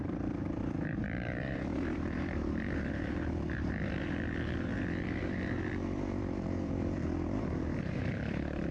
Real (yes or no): no